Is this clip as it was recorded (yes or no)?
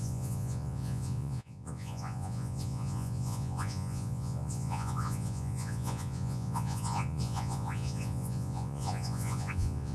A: no